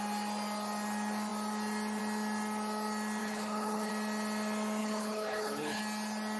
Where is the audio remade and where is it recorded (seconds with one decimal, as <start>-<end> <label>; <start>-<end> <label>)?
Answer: 0.0-3.2 recorded; 3.2-3.9 remade; 3.9-4.8 recorded; 4.8-5.8 remade; 5.8-6.4 recorded